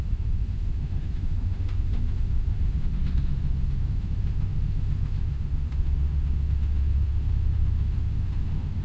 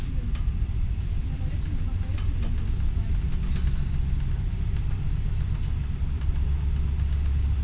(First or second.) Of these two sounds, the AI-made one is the first